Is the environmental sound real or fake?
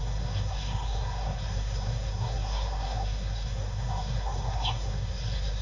fake